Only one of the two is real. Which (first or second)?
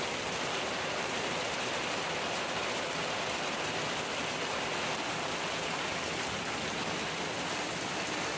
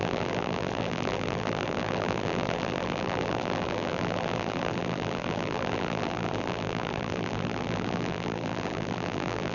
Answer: first